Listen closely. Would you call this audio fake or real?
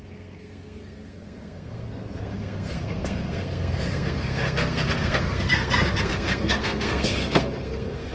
fake